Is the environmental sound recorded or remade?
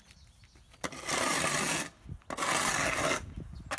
recorded